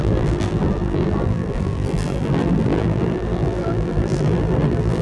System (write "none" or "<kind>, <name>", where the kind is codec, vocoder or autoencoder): vocoder, BigVGAN v2